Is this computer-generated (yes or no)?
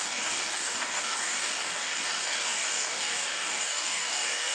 yes